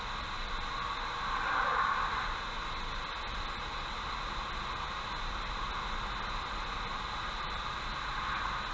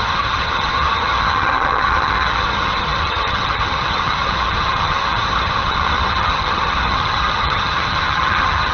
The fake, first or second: second